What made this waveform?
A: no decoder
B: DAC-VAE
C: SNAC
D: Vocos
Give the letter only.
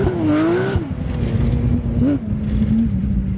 A